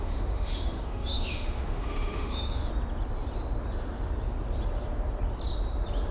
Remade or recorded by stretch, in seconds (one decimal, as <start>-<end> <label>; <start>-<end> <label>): 0.0-2.7 remade; 2.7-6.1 recorded